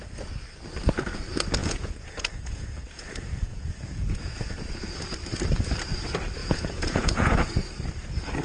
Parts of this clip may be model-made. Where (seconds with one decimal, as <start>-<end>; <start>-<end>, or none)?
1.6-4.9; 6.4-7.4